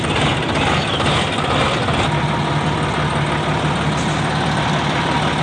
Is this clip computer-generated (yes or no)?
no